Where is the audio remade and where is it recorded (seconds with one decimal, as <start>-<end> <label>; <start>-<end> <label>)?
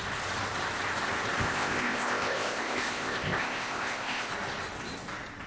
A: 0.0-1.4 recorded; 1.4-4.3 remade; 4.3-5.5 recorded